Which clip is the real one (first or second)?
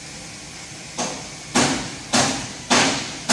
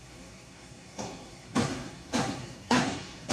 first